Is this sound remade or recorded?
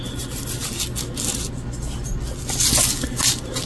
recorded